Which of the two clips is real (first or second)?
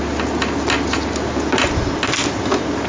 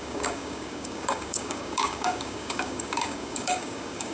first